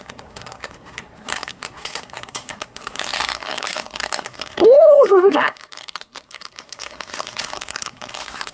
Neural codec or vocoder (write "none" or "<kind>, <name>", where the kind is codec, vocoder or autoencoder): codec, SNAC